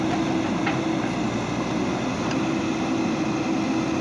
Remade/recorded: recorded